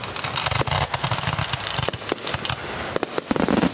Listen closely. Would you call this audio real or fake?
real